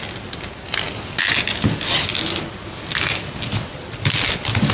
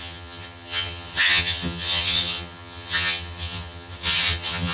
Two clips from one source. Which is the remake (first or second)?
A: second